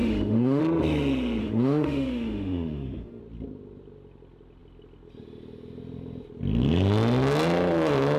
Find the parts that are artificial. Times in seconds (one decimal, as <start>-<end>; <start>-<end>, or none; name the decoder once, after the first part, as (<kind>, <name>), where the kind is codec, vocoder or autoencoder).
0.0-0.6 (autoencoder, DAC-VAE); 1.4-3.2